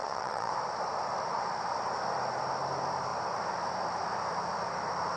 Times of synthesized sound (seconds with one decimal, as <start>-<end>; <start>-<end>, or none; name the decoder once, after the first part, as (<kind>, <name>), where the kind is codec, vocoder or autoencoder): 0.0-0.5 (vocoder, WaveNeXt)